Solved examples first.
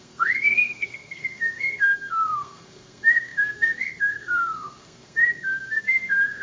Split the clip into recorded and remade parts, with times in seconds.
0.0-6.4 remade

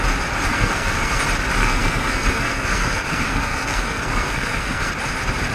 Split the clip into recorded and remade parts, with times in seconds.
0.0-0.5 recorded; 0.5-1.2 remade; 1.2-1.6 recorded; 1.6-4.9 remade; 4.9-5.5 recorded

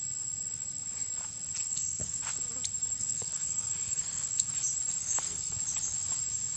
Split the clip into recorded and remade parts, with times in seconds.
0.0-1.6 recorded; 1.6-2.2 remade; 2.2-3.0 recorded; 3.0-4.5 remade; 4.5-5.0 recorded; 5.0-5.5 remade; 5.5-6.6 recorded

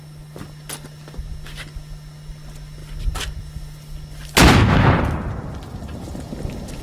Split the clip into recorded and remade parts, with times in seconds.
0.0-6.8 recorded

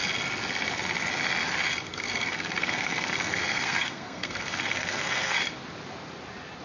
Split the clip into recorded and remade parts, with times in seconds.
0.0-1.9 recorded; 1.9-5.4 remade; 5.4-6.6 recorded

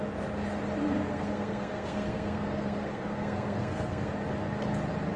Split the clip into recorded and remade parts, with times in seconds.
0.0-1.0 recorded; 1.0-4.1 remade; 4.1-5.2 recorded